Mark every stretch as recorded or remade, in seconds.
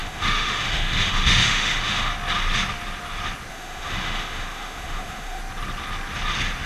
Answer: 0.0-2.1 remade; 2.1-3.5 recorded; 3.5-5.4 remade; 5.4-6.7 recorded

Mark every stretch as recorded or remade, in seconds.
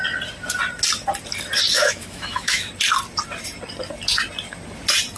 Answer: 0.0-1.7 recorded; 1.7-2.7 remade; 2.7-5.2 recorded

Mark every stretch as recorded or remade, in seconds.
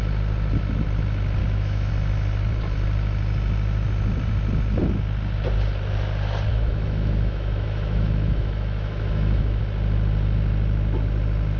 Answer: 0.0-1.4 recorded; 1.4-1.9 remade; 1.9-6.5 recorded; 6.5-9.6 remade; 9.6-11.6 recorded